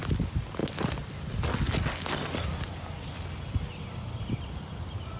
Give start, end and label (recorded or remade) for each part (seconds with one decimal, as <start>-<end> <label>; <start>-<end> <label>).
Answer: 0.0-5.2 recorded